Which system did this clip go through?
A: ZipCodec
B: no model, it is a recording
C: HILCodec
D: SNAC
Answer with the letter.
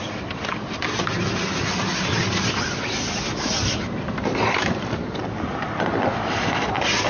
B